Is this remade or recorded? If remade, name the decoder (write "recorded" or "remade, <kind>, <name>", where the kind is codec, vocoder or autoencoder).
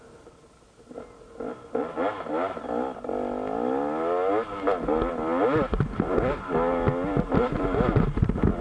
recorded